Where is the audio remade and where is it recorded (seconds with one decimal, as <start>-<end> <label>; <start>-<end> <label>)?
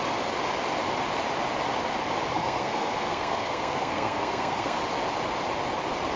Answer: 0.0-2.3 recorded; 2.3-4.8 remade; 4.8-6.2 recorded